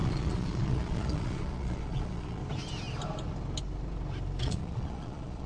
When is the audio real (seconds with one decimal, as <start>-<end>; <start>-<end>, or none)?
2.4-4.4